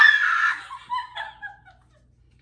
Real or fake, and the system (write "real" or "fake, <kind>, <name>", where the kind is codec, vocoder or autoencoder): real